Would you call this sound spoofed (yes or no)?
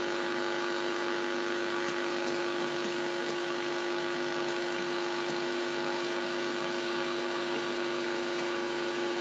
yes